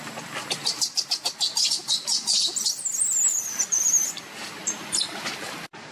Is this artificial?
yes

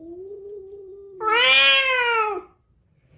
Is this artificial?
no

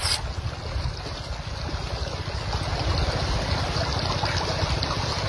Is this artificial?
no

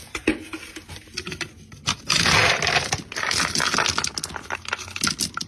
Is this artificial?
no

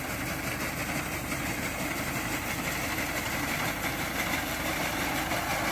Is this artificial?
no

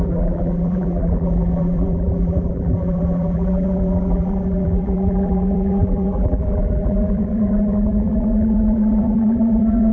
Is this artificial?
yes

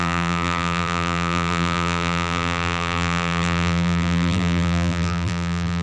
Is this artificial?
yes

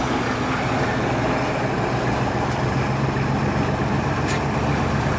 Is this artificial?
no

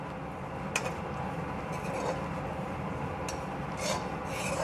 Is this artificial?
no